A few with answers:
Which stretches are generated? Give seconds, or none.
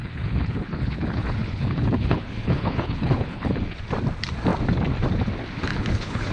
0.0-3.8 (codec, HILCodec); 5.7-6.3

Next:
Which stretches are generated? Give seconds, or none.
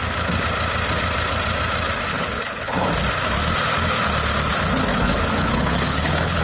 2.1-2.9 (codec, HILCodec); 4.9-6.4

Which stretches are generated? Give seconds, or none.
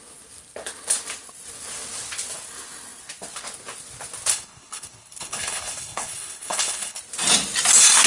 4.3-7.0 (codec, HILCodec)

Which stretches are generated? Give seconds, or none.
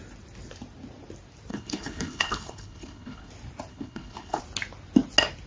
1.5-3.3 (codec, HILCodec); 3.7-4.4